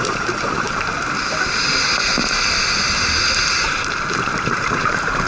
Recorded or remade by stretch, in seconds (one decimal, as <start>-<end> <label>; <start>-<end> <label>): 0.0-0.9 remade; 0.9-2.0 recorded; 2.0-5.3 remade